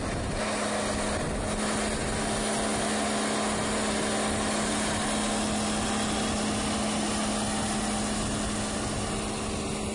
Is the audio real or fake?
real